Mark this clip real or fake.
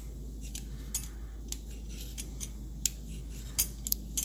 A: real